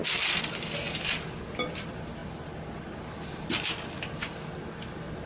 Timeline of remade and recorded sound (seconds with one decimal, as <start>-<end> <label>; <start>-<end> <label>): 0.0-5.3 recorded